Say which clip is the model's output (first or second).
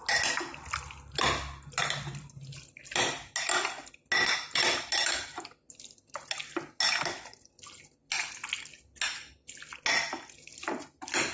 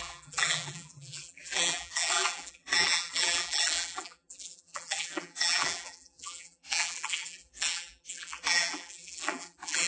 second